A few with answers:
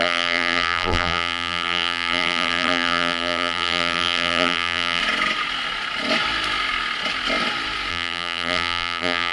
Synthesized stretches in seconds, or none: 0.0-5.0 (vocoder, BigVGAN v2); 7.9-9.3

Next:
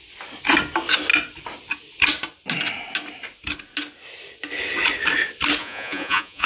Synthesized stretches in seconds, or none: 5.6-6.5 (vocoder, Vocos)

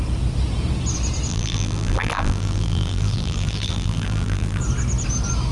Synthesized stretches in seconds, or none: 1.3-4.6 (vocoder, BigVGAN v2)

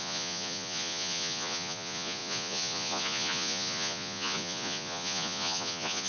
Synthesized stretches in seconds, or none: 0.0-6.1 (vocoder, Vocos)